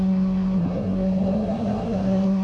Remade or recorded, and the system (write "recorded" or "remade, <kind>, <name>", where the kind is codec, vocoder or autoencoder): remade, codec, SNAC